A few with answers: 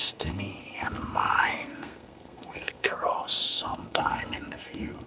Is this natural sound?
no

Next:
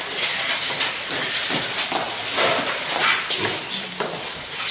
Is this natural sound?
yes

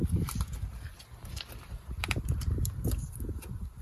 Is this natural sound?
no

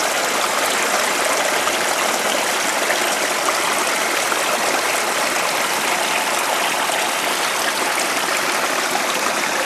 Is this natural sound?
yes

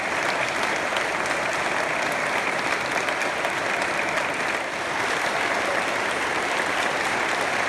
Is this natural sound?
yes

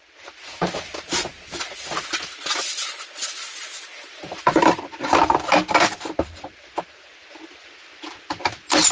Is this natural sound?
yes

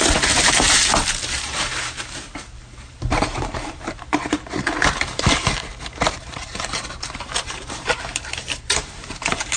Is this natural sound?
no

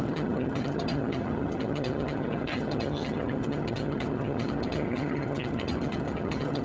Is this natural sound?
no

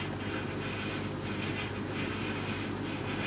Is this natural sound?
yes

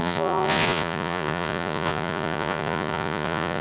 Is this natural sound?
no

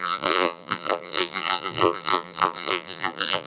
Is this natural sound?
no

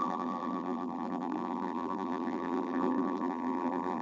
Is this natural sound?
no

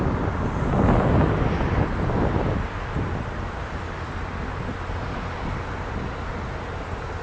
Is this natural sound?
yes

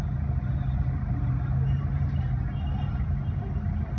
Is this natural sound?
yes